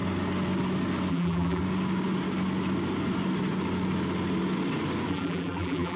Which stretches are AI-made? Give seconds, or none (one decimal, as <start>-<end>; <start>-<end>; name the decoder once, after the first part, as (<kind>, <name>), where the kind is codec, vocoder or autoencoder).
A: 1.1-1.6 (vocoder, BigVGAN v2); 5.1-6.0